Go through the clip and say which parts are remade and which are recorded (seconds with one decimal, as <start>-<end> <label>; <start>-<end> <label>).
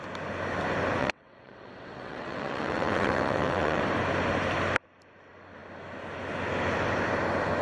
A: 0.0-1.0 recorded; 1.0-3.8 remade; 3.8-7.6 recorded